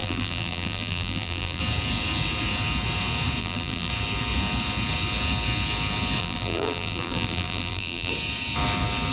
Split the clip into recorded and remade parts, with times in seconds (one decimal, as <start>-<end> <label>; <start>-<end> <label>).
0.0-1.6 remade; 1.6-3.4 recorded; 3.4-3.9 remade; 3.9-6.2 recorded; 6.2-8.1 remade; 8.1-9.1 recorded